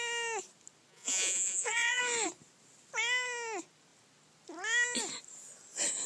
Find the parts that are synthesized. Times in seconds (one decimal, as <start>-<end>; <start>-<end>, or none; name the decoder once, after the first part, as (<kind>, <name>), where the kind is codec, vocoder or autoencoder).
0.9-2.0 (vocoder, Vocos)